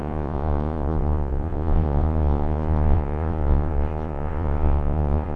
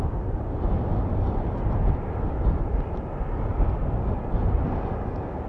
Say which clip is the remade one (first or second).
first